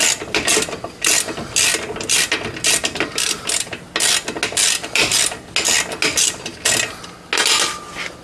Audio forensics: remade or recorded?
recorded